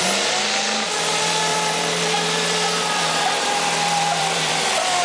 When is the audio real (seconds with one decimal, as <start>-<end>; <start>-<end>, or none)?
0.0-1.5; 4.5-5.0